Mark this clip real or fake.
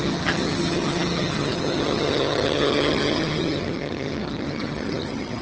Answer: fake